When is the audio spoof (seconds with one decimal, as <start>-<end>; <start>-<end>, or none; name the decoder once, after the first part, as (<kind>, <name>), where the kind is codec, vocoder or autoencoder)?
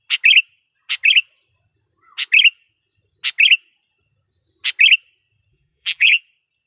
5.5-6.2 (vocoder, BigVGAN v2)